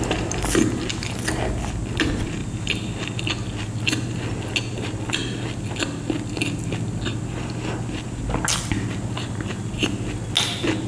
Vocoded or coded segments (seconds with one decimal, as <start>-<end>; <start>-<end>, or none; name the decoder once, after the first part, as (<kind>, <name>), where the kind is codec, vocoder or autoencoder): 2.4-3.3 (vocoder, BigVGAN v2)